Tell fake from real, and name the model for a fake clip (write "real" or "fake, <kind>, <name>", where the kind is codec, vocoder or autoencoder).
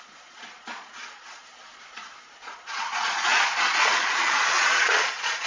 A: fake, vocoder, Vocos